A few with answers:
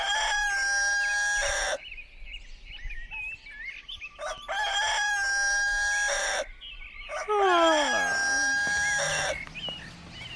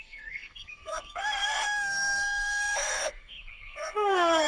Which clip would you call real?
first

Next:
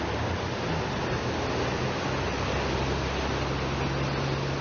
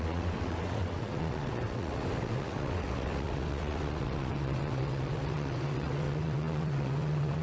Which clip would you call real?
first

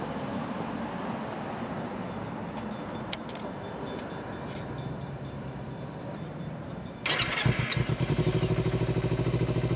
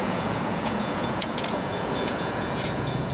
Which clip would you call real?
first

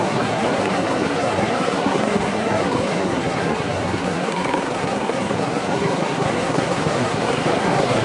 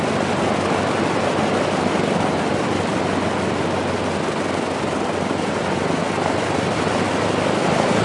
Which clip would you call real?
second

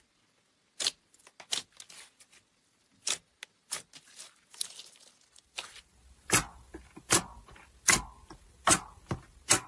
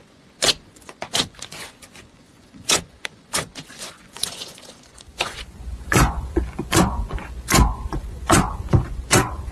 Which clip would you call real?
first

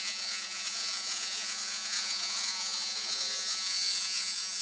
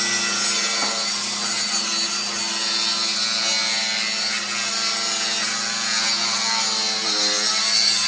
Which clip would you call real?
second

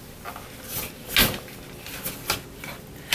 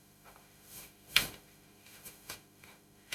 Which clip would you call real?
first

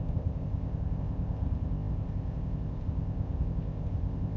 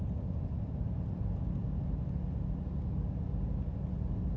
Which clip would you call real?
second